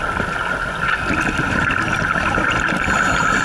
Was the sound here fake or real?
real